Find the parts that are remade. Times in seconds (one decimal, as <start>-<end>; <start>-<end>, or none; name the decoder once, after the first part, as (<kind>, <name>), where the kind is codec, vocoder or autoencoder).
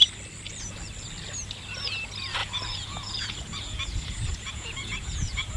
2.4-5.6 (vocoder, Vocos)